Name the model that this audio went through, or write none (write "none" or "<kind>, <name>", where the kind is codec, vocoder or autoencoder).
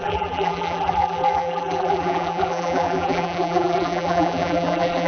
vocoder, BigVGAN v2